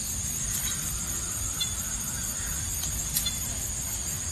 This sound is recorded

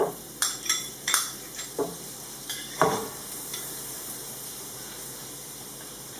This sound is remade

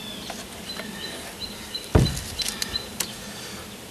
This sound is recorded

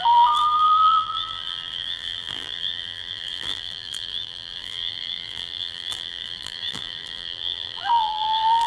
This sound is remade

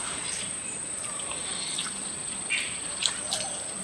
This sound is remade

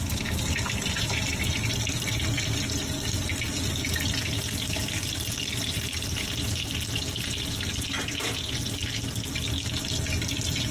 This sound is recorded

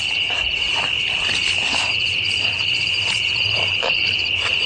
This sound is remade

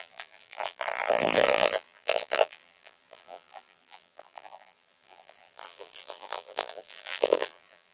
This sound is remade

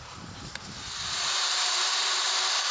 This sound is remade